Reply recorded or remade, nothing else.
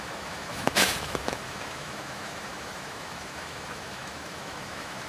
remade